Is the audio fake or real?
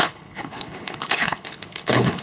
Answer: fake